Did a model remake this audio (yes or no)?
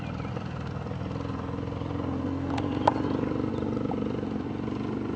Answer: no